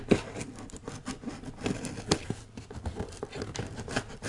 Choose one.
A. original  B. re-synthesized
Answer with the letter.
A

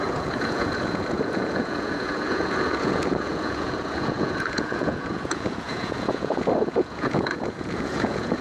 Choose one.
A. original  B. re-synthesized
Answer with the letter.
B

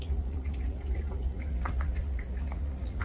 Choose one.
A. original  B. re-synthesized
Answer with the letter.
B